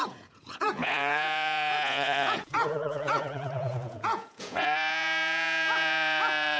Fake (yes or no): yes